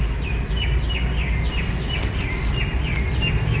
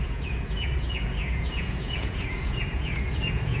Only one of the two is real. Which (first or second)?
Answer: first